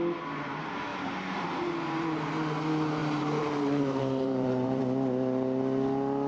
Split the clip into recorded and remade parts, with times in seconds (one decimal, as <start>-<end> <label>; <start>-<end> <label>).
0.0-0.9 recorded; 0.9-1.4 remade; 1.4-3.0 recorded; 3.0-4.8 remade; 4.8-6.3 recorded